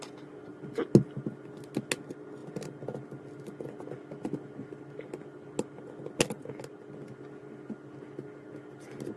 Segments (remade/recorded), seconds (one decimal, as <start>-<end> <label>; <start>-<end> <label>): 0.0-9.2 recorded